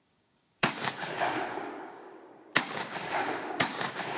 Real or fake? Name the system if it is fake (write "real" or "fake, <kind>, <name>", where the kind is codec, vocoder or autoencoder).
fake, codec, DAC